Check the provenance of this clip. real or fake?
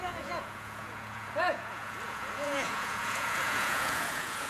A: fake